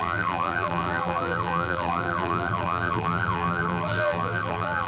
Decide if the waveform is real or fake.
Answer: fake